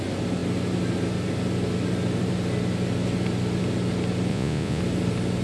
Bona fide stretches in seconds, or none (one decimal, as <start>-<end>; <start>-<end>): 0.0-4.3; 4.8-5.4